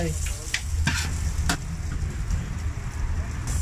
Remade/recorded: recorded